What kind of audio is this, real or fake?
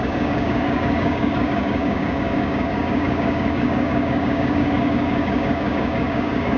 fake